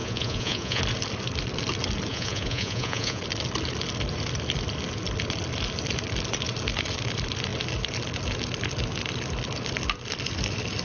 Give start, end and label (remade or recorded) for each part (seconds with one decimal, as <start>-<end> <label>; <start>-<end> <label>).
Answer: 0.0-0.8 remade; 0.8-2.1 recorded; 2.1-3.2 remade; 3.2-10.8 recorded